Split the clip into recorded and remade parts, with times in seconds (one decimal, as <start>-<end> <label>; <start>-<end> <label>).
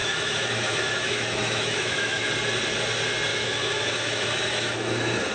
0.0-2.3 remade; 2.3-3.3 recorded; 3.3-5.3 remade